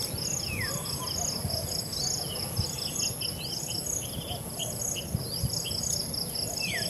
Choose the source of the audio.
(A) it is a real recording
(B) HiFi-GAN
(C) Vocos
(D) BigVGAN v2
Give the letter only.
A